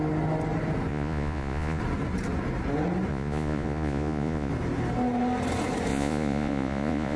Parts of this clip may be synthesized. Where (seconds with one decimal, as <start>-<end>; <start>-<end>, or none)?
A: 0.9-1.8; 3.1-4.5; 5.9-7.2